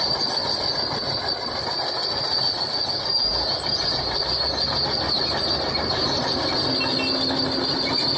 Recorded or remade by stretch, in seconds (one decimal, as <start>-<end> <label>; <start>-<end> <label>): 0.0-8.2 recorded